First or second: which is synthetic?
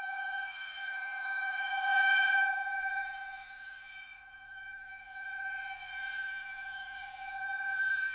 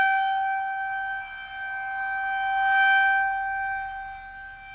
first